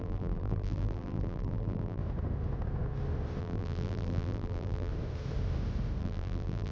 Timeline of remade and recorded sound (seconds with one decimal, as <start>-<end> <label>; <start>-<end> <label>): 0.0-2.0 remade; 2.0-3.4 recorded; 3.4-4.9 remade; 4.9-6.0 recorded; 6.0-6.7 remade